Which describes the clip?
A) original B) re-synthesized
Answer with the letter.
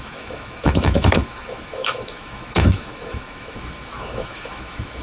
B